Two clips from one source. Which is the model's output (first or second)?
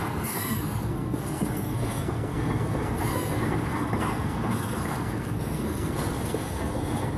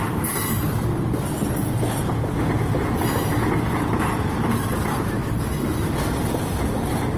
first